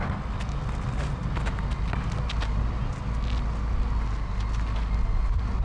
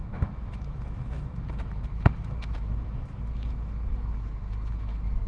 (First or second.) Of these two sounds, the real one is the first